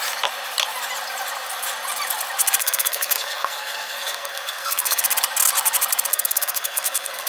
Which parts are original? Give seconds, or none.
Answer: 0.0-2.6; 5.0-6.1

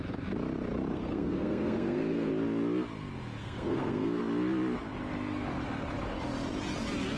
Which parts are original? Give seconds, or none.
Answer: 0.0-0.9; 2.3-3.4; 4.2-7.2

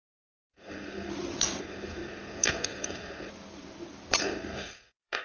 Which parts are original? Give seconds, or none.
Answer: 1.1-1.6; 3.3-4.2

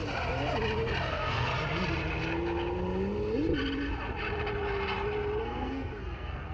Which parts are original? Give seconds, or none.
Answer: 0.0-1.1; 1.5-5.4

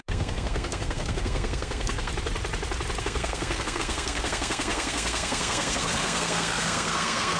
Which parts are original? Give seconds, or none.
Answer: 2.1-3.0

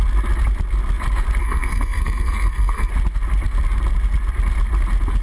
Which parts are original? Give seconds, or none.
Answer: 0.0-1.4; 2.9-5.2

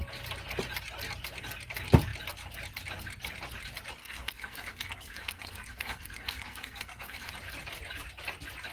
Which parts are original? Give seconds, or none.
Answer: 0.0-4.0; 7.3-8.7